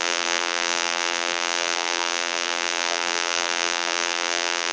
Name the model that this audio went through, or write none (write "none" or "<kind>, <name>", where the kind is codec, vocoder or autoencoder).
vocoder, BigVGAN v2